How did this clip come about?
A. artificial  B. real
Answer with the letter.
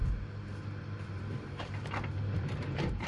A